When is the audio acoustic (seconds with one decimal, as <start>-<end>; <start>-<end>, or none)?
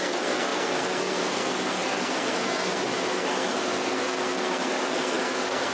none